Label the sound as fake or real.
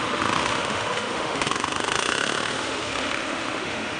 fake